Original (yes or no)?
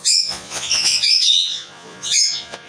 no